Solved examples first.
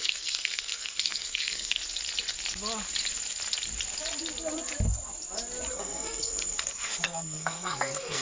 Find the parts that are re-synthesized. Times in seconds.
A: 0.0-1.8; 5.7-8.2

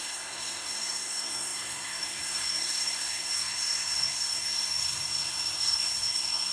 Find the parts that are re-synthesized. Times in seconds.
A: 0.0-6.5